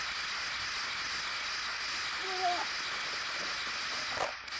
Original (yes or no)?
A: yes